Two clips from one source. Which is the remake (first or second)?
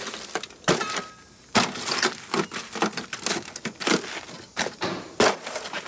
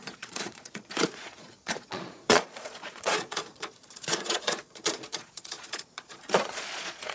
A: second